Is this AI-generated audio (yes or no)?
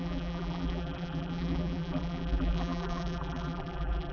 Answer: yes